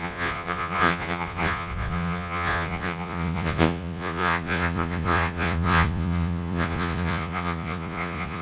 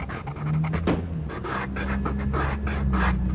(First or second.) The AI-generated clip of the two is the first